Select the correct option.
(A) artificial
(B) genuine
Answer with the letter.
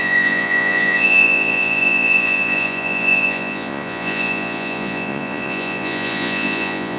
A